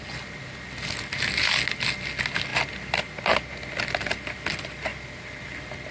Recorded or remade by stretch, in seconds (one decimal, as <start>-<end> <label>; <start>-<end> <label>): 0.0-5.9 recorded